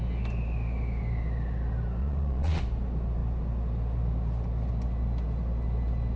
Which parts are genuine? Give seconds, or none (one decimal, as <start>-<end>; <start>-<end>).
0.0-2.0; 2.6-6.2